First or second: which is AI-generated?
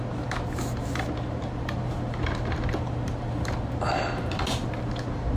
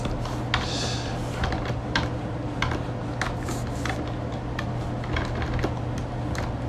first